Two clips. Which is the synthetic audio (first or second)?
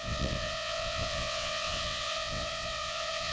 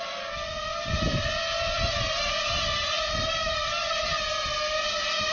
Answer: first